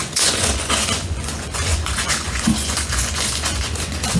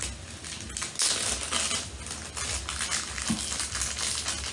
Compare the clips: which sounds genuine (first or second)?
second